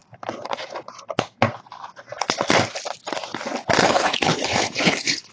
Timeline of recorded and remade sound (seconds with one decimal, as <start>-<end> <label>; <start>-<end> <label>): 0.0-3.8 recorded; 3.8-5.3 remade